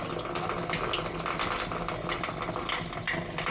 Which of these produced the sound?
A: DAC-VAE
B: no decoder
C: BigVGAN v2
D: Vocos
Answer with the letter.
B